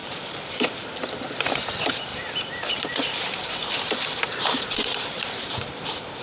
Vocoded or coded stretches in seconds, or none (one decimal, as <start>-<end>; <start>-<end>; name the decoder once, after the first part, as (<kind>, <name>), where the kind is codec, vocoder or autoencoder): 0.0-0.7 (vocoder, BigVGAN v2); 2.1-5.5